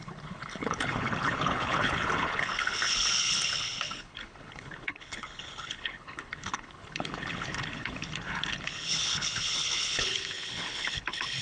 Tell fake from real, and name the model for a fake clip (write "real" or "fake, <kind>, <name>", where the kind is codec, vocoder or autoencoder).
fake, codec, HILCodec